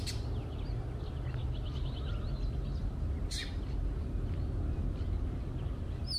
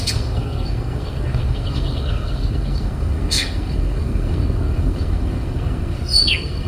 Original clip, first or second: first